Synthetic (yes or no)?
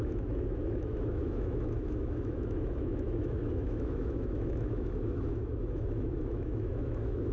yes